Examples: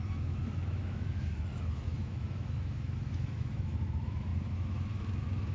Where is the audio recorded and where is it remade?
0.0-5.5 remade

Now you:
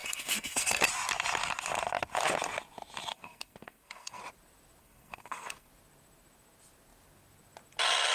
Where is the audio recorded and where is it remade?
0.0-0.8 remade; 0.8-3.1 recorded; 3.1-4.2 remade; 4.2-4.8 recorded; 4.8-5.7 remade; 5.7-8.1 recorded

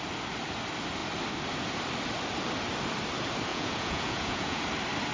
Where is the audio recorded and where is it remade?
0.0-3.5 recorded; 3.5-4.6 remade; 4.6-5.1 recorded

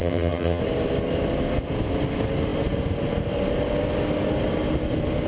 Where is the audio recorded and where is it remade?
0.0-0.6 remade; 0.6-5.3 recorded

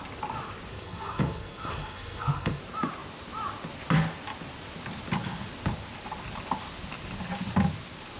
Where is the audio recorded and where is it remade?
0.0-0.7 recorded; 0.7-2.6 remade; 2.6-8.2 recorded

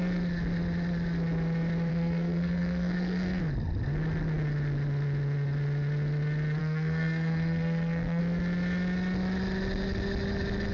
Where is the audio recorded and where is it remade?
0.0-1.9 recorded; 1.9-3.4 remade; 3.4-6.6 recorded; 6.6-8.2 remade; 8.2-10.7 recorded

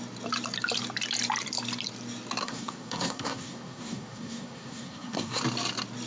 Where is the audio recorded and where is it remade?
0.0-2.4 recorded; 2.4-5.4 remade; 5.4-6.1 recorded